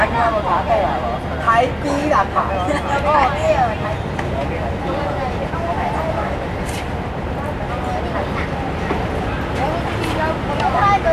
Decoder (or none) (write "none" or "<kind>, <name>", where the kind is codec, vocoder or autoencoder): none